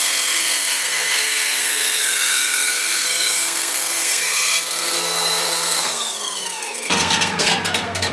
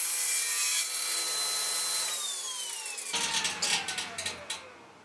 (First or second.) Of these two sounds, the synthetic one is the first